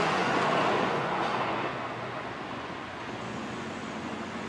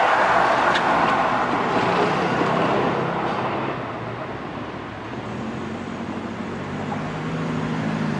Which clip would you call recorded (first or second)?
second